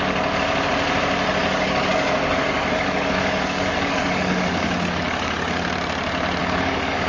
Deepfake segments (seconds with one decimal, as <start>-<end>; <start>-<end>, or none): 1.4-5.7; 6.4-7.1

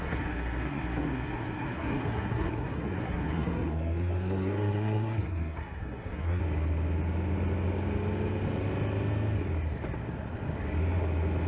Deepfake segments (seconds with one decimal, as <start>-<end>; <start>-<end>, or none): 0.0-6.4

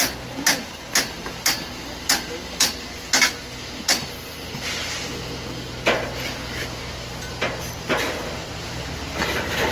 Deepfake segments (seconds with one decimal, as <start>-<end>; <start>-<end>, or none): none

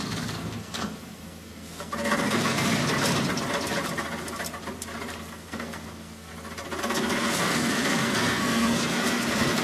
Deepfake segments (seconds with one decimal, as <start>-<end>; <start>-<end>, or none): 0.0-2.8; 5.2-6.3; 6.8-9.6